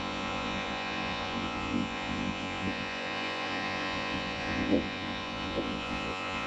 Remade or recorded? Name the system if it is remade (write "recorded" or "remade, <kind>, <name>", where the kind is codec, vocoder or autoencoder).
remade, vocoder, Vocos